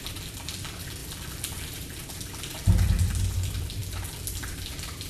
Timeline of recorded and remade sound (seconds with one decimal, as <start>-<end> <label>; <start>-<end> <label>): 0.0-3.8 remade; 3.8-4.4 recorded; 4.4-5.1 remade